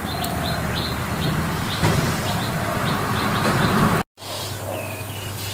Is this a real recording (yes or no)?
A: yes